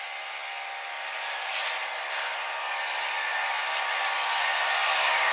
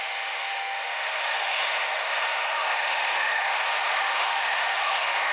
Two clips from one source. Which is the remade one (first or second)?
second